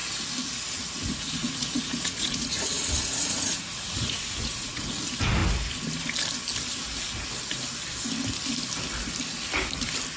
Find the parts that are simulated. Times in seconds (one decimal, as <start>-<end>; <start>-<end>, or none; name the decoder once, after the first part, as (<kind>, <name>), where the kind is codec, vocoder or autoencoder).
1.1-4.9 (vocoder, Vocos)